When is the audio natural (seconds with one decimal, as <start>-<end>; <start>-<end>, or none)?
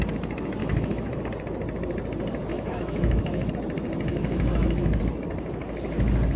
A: 0.0-0.6; 1.2-2.5; 3.5-4.1; 5.0-6.4